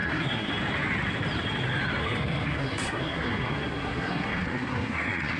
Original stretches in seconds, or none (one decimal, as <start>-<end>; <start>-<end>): 0.5-2.0